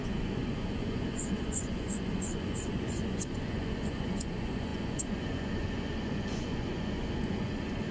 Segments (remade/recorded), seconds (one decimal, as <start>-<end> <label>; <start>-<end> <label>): 0.0-7.9 remade